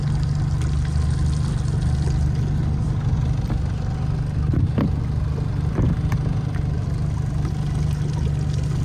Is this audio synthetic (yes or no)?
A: no